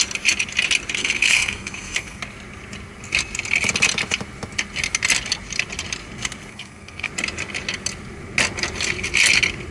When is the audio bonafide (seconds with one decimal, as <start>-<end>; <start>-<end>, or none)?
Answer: 0.0-1.0; 2.2-6.5; 7.1-9.7